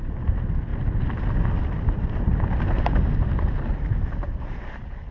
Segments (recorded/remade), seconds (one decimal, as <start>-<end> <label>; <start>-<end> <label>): 0.0-5.1 recorded